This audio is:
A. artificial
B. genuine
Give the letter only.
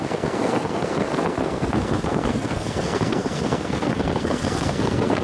A